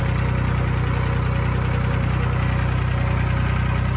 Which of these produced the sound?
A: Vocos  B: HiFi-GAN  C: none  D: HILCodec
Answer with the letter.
C